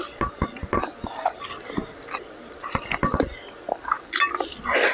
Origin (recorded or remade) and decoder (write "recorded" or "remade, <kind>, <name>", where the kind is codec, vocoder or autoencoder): recorded